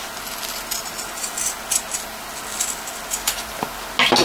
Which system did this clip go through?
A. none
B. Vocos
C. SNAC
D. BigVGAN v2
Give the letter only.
A